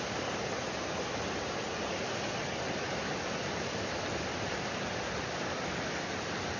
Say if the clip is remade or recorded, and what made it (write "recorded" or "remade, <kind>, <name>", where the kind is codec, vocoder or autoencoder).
recorded